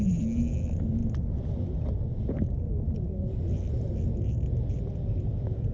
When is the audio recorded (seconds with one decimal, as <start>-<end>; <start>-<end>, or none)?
0.0-5.7